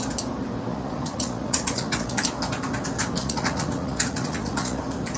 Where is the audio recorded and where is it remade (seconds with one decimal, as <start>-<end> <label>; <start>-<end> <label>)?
0.0-0.7 recorded; 0.7-2.2 remade; 2.2-3.2 recorded; 3.2-4.8 remade; 4.8-5.2 recorded